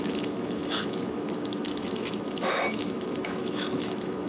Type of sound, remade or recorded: remade